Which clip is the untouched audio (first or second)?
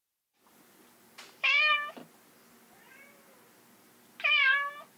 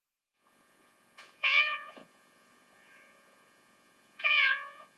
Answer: first